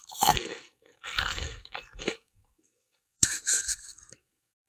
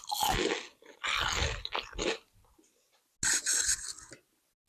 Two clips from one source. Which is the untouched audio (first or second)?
second